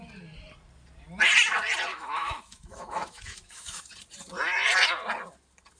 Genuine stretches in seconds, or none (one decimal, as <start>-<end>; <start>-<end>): 0.0-1.9; 3.9-5.8